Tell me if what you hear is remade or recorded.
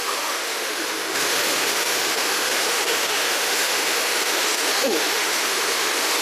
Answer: remade